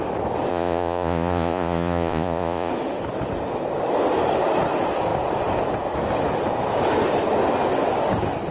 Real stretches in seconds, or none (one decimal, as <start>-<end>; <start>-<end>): 0.0-0.5; 2.7-8.5